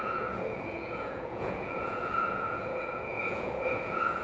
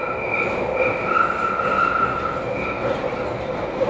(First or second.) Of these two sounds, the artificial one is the first